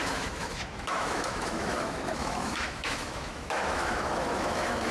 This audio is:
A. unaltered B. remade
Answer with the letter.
B